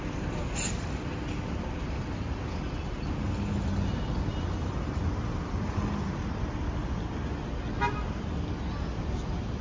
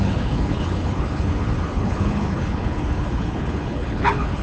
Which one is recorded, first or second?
first